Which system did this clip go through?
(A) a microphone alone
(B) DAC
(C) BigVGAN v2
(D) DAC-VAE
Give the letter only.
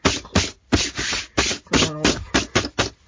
A